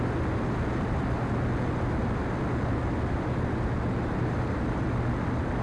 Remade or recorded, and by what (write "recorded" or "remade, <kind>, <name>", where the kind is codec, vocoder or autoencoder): recorded